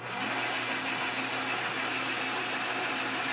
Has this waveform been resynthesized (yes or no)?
no